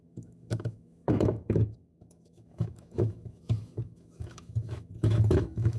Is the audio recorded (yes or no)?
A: no